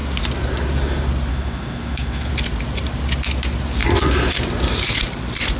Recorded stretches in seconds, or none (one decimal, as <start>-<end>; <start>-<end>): 0.0-1.3; 2.3-5.6